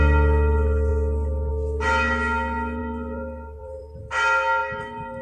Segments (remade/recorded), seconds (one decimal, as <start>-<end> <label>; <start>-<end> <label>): 0.0-2.8 recorded; 2.8-4.0 remade; 4.0-4.6 recorded; 4.6-5.2 remade